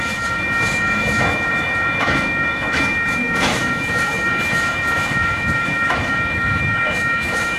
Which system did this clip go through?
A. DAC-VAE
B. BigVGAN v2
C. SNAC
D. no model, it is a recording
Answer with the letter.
A